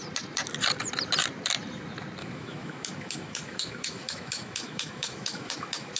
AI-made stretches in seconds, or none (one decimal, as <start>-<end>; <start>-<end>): 2.2-6.0